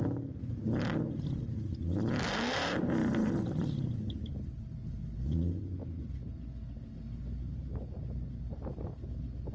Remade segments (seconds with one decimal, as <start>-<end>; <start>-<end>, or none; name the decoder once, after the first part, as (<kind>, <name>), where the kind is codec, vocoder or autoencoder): none